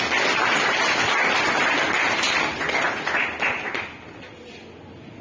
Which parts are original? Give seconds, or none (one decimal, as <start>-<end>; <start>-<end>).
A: 0.0-5.2